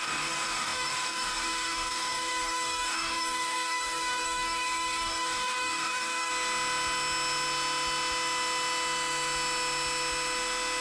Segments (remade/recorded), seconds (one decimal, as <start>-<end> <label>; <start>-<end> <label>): 0.0-6.3 remade; 6.3-10.8 recorded

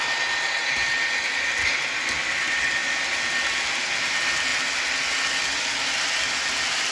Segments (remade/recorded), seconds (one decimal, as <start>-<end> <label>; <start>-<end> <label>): 0.0-6.9 recorded

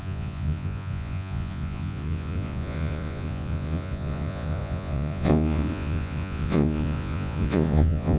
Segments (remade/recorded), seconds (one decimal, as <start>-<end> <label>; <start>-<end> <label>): 0.0-8.2 remade

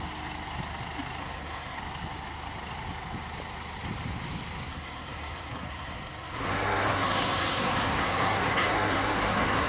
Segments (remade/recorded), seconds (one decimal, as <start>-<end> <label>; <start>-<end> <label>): 0.0-1.2 recorded; 1.2-1.8 remade; 1.8-4.7 recorded; 4.7-9.7 remade

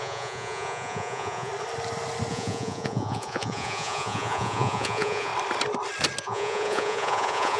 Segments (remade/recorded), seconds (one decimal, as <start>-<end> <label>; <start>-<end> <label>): 0.0-1.5 remade; 1.5-2.3 recorded; 2.3-5.3 remade; 5.3-6.2 recorded; 6.2-7.6 remade

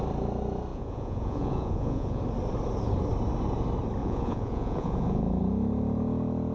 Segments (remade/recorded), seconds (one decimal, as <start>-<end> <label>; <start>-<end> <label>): 0.0-0.7 recorded; 0.7-2.2 remade; 2.2-4.0 recorded; 4.0-5.4 remade; 5.4-6.5 recorded

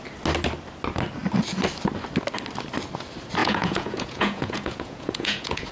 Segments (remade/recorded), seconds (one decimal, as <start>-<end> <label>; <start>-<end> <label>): 0.0-3.4 recorded; 3.4-5.7 remade